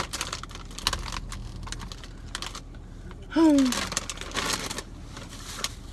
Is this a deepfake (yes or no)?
no